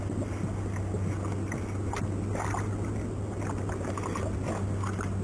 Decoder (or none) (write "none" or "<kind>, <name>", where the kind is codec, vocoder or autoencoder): none